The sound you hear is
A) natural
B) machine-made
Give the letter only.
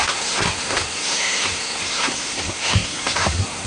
B